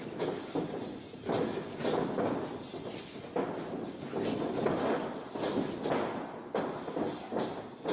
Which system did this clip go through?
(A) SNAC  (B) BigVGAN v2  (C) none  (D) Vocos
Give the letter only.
C